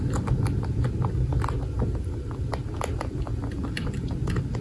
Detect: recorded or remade recorded